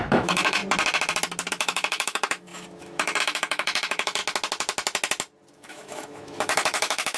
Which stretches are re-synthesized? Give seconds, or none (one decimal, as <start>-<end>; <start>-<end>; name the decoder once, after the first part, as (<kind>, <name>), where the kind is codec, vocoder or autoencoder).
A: 0.0-0.6 (autoencoder, DAC-VAE); 1.5-4.2; 5.5-7.2